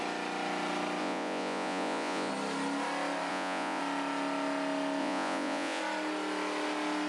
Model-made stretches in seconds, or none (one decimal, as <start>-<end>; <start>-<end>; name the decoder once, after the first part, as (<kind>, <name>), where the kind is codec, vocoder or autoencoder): 1.0-2.3 (vocoder, Vocos); 3.3-3.8; 5.0-5.8